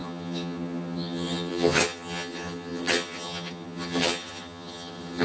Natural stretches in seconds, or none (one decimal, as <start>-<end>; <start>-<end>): none

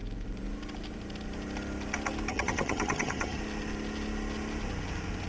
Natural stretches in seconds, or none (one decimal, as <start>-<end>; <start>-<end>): 0.0-2.3; 3.4-5.3

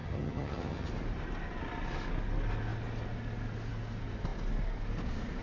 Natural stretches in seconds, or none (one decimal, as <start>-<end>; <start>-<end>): 0.9-5.4

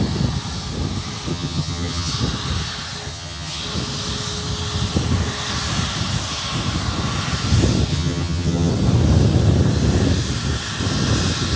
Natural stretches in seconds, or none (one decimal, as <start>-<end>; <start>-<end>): 0.0-1.3; 2.1-3.1; 3.6-7.9; 8.7-11.6

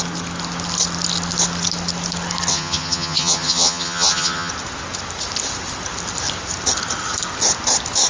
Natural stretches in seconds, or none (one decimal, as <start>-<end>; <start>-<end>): 0.0-2.5; 4.5-8.1

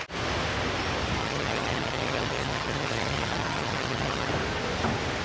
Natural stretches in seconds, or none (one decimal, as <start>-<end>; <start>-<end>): 0.0-1.2; 4.3-5.2